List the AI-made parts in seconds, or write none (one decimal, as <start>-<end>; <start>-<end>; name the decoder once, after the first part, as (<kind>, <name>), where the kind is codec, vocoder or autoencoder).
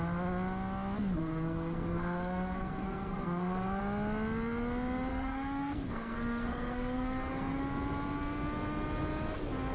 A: 1.2-3.8 (codec, SNAC); 5.1-7.6